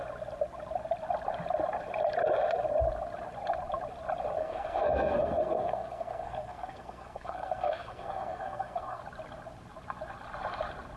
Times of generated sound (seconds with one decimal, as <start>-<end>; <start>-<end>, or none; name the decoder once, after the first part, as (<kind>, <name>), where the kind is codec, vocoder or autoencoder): 4.4-9.0 (codec, SNAC)